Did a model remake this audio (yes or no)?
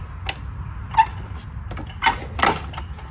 no